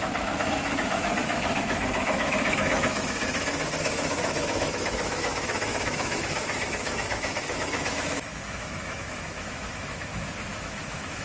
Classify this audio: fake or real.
fake